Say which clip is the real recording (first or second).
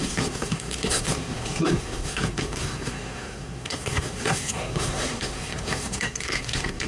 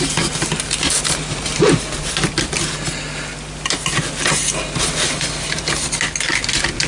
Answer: second